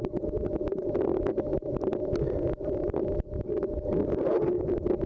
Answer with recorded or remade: recorded